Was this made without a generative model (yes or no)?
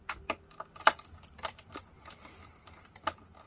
yes